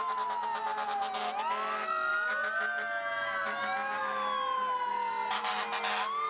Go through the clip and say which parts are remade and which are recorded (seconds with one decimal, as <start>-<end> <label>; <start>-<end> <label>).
0.0-6.3 recorded